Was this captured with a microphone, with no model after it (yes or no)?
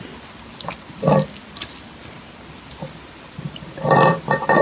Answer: yes